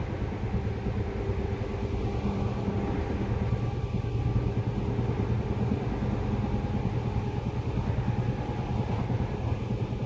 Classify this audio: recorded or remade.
recorded